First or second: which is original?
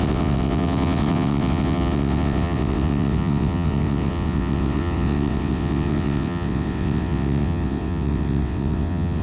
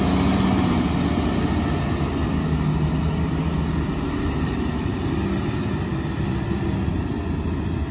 second